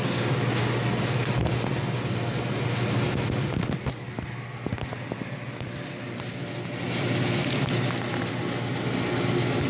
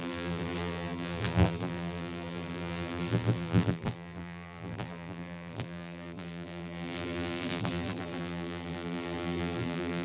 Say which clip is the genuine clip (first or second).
first